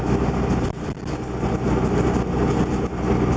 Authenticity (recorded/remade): recorded